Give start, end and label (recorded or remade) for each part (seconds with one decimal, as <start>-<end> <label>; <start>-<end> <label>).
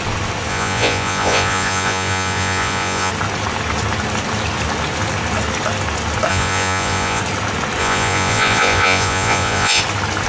0.0-0.5 recorded; 0.5-3.1 remade; 3.1-6.3 recorded; 6.3-7.2 remade; 7.2-7.8 recorded; 7.8-9.8 remade; 9.8-10.3 recorded